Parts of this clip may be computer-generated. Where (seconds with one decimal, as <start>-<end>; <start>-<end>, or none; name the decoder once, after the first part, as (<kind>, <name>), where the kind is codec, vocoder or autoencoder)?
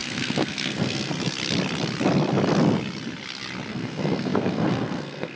0.0-1.1 (codec, SNAC); 3.7-5.4